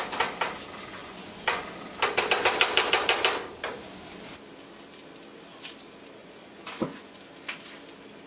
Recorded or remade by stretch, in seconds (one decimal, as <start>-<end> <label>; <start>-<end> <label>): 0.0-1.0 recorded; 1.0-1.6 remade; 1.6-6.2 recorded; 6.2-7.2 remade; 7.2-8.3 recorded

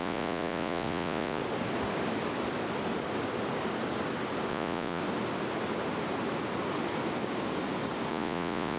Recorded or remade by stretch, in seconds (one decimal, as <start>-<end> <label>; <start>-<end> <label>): 0.0-1.4 remade; 1.4-4.5 recorded; 4.5-5.0 remade; 5.0-8.1 recorded; 8.1-8.8 remade

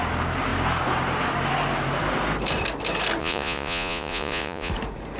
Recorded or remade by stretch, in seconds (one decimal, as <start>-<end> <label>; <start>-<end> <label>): 0.0-3.2 recorded; 3.2-4.7 remade; 4.7-5.2 recorded

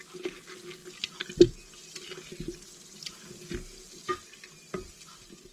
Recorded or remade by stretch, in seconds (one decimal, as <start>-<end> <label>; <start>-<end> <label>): 0.0-5.5 recorded